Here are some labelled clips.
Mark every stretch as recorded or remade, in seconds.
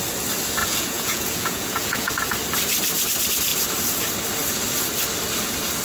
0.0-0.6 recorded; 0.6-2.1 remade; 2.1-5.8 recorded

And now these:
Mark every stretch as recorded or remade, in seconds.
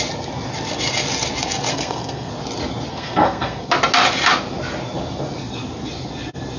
0.0-1.7 recorded; 1.7-2.3 remade; 2.3-2.9 recorded; 2.9-3.7 remade; 3.7-6.6 recorded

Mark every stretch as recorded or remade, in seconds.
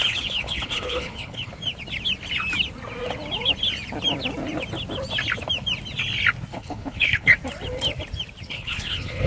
0.0-1.5 remade; 1.5-6.5 recorded; 6.5-7.3 remade; 7.3-8.5 recorded; 8.5-9.3 remade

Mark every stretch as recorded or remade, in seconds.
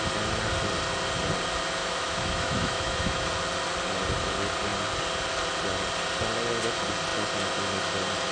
0.0-1.8 recorded; 1.8-3.3 remade; 3.3-8.3 recorded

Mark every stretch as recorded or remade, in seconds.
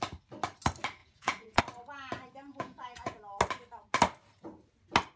0.0-1.0 recorded; 1.0-1.6 remade; 1.6-2.5 recorded; 2.5-3.2 remade; 3.2-5.2 recorded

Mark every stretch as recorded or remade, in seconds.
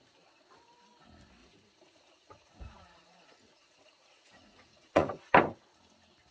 0.0-1.4 recorded; 1.4-5.2 remade; 5.2-6.3 recorded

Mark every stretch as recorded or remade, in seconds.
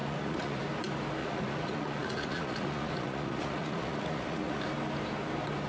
0.0-0.6 remade; 0.6-1.2 recorded; 1.2-4.6 remade; 4.6-5.7 recorded